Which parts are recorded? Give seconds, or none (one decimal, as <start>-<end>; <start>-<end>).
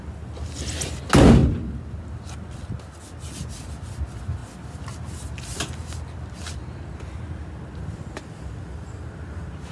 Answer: 0.0-9.7